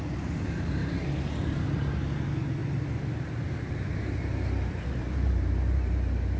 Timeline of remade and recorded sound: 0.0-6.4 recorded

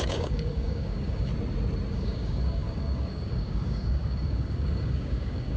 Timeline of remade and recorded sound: 0.0-1.3 remade; 1.3-1.9 recorded; 1.9-5.6 remade

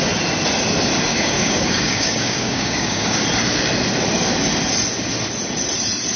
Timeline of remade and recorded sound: 0.0-1.1 recorded; 1.1-3.2 remade; 3.2-6.2 recorded

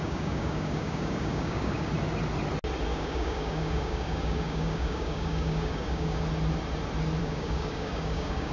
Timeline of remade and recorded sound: 0.0-1.9 remade; 1.9-2.9 recorded; 2.9-6.2 remade; 6.2-7.2 recorded; 7.2-8.5 remade

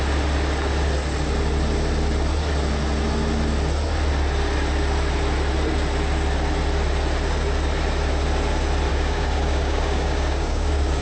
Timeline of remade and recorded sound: 0.0-8.9 recorded; 8.9-11.0 remade

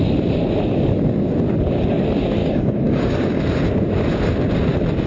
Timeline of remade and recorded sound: 0.0-2.4 recorded; 2.4-3.4 remade; 3.4-5.1 recorded

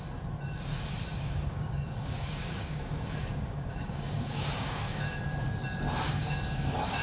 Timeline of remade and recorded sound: 0.0-1.1 recorded; 1.1-5.2 remade; 5.2-6.2 recorded; 6.2-7.0 remade

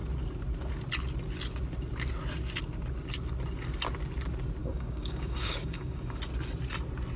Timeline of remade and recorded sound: 0.0-4.6 recorded; 4.6-6.2 remade; 6.2-7.2 recorded